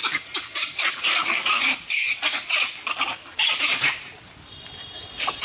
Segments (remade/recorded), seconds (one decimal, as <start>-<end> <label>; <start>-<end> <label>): 0.0-0.8 remade; 0.8-1.6 recorded; 1.6-2.5 remade; 2.5-3.3 recorded; 3.3-4.1 remade; 4.1-5.4 recorded